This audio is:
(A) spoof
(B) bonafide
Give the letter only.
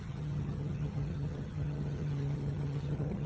A